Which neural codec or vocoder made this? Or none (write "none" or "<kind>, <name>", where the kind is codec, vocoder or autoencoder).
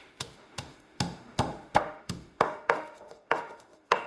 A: autoencoder, DAC-VAE